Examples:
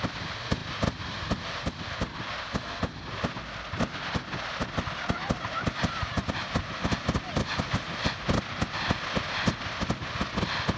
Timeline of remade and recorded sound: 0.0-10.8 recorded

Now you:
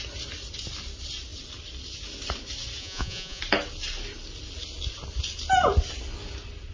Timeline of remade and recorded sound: 0.0-2.8 recorded; 2.8-3.4 remade; 3.4-6.7 recorded

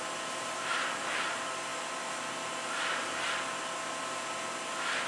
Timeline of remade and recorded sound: 0.0-5.1 recorded

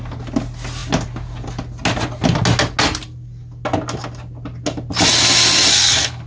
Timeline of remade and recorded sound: 0.0-5.7 recorded; 5.7-6.3 remade

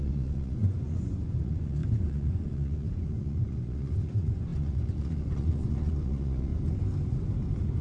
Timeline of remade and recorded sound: 0.0-6.5 remade; 6.5-7.8 recorded